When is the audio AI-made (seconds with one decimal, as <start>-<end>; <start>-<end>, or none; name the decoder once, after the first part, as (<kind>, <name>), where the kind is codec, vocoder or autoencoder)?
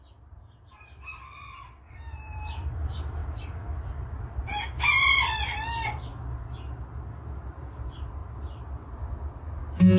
0.0-6.1 (vocoder, BigVGAN v2); 7.4-8.2